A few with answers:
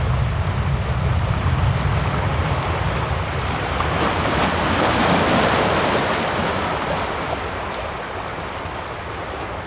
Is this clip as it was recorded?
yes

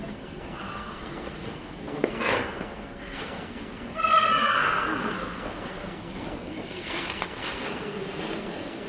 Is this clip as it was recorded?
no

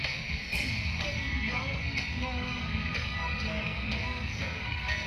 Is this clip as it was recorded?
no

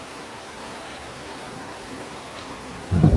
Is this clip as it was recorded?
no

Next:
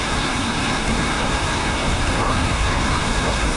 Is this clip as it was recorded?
no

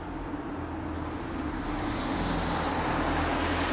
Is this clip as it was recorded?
yes